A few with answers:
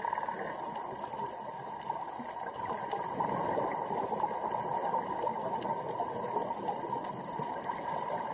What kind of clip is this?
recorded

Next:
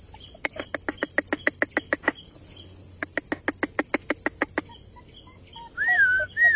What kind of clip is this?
recorded